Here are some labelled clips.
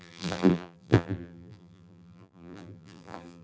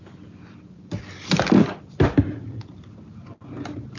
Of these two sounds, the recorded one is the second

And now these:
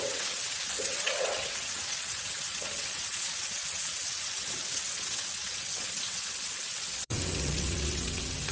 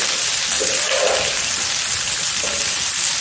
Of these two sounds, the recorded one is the second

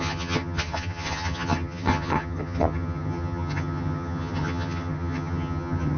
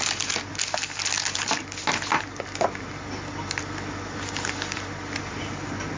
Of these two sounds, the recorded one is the second